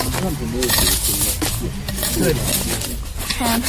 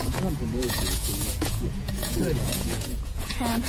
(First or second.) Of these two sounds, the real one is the first